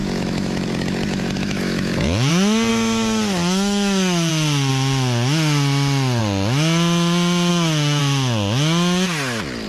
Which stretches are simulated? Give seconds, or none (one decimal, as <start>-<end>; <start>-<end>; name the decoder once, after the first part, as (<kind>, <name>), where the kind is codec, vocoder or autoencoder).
0.0-2.3 (autoencoder, DAC-VAE); 2.7-4.3; 7.5-8.0